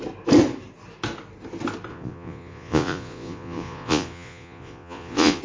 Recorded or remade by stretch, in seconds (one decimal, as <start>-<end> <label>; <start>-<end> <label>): 0.0-1.9 recorded; 1.9-5.4 remade